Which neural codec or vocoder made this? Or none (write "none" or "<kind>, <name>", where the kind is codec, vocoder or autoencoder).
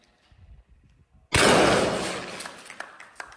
none